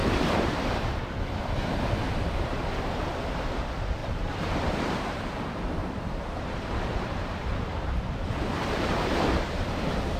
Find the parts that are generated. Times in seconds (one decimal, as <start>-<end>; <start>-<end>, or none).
0.0-1.0; 4.0-5.2; 5.8-10.2